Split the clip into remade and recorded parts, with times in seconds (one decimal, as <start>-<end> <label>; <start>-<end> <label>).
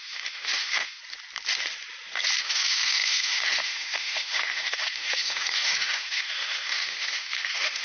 0.0-1.0 remade; 1.0-2.4 recorded; 2.4-7.8 remade